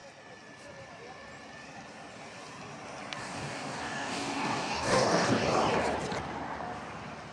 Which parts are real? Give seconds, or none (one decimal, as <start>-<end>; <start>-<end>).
0.0-3.2; 5.4-7.3